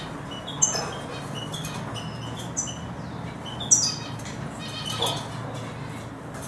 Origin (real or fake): real